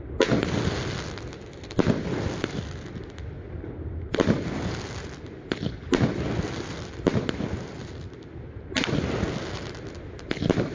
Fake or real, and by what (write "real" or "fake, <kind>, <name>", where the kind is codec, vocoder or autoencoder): real